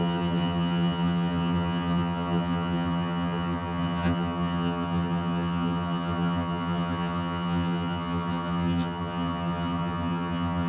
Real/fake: fake